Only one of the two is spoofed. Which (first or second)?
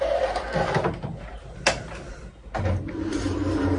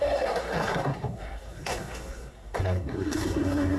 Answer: second